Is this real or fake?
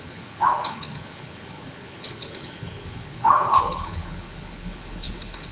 fake